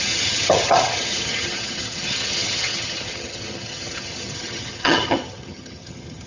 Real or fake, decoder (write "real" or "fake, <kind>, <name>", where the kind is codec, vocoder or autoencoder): fake, vocoder, HiFi-GAN